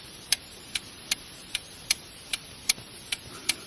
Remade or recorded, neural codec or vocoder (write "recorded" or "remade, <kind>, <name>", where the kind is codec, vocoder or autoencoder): remade, vocoder, BigVGAN v2